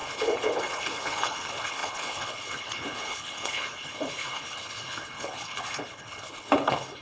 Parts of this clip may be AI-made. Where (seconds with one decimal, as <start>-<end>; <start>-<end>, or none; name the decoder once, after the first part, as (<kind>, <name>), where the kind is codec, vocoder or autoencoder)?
0.0-7.0 (codec, HILCodec)